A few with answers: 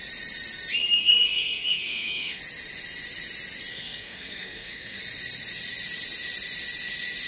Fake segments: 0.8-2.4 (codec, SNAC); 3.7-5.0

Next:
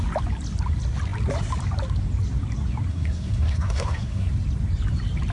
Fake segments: 2.9-4.3 (codec, SNAC)

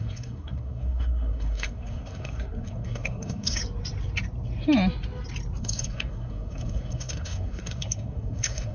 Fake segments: 0.0-3.6 (codec, SNAC); 5.6-8.7

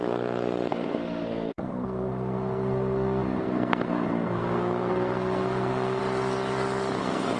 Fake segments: 0.0-6.0 (codec, SNAC); 7.0-7.4